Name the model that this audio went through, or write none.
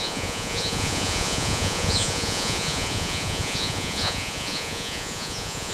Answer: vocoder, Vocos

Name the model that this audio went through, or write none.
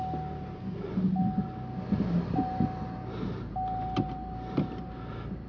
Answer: none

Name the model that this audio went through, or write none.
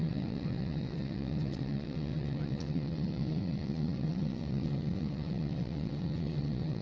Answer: vocoder, WaveNeXt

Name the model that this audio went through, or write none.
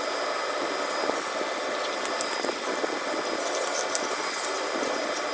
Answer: none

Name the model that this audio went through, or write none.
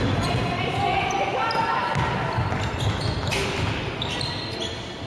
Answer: none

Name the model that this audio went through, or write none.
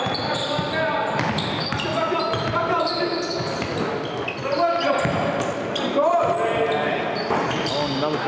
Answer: none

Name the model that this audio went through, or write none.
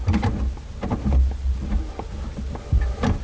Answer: none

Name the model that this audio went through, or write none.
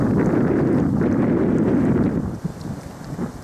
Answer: none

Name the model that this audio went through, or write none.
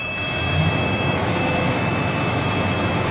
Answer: autoencoder, DAC-VAE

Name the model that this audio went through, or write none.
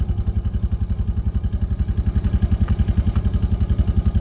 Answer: none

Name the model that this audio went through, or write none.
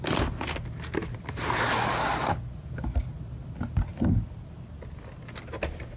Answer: none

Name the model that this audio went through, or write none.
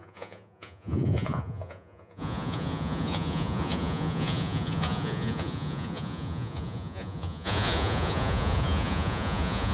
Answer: vocoder, Vocos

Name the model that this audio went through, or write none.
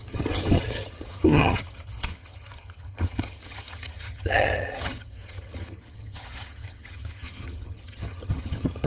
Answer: vocoder, HiFi-GAN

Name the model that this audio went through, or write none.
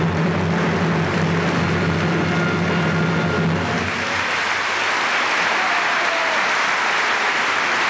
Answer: none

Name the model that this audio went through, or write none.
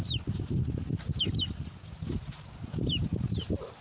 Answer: none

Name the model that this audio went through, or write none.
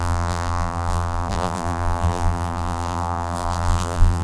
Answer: vocoder, BigVGAN v2